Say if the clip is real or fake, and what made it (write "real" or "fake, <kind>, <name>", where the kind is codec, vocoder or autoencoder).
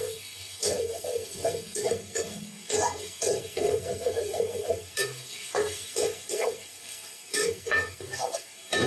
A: fake, codec, SNAC